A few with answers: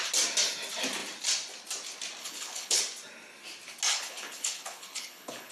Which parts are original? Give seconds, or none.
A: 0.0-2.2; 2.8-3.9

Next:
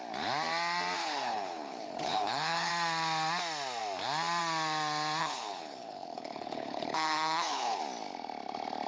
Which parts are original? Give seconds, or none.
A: 0.0-1.0; 2.7-5.2; 7.8-8.9

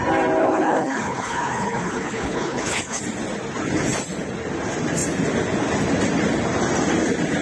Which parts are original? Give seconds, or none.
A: 0.0-0.4; 3.0-7.4

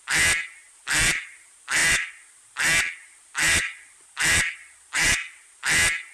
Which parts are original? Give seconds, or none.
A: 0.0-6.1

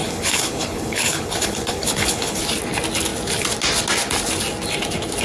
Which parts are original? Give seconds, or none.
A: 2.4-5.2

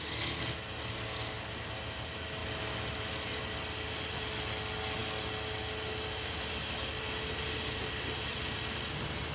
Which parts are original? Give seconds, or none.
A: 0.0-9.3

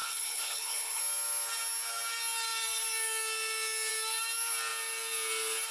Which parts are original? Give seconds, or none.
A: 1.0-5.7

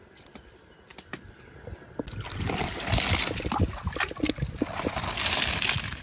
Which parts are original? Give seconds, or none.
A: 0.0-6.0